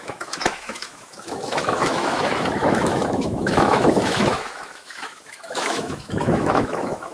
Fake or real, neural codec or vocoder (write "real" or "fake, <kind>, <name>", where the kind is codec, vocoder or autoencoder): fake, autoencoder, DAC-VAE